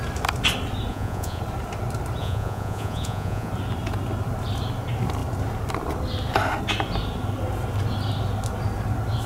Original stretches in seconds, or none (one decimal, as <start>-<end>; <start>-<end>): 0.0-0.9; 1.4-2.2; 3.5-9.3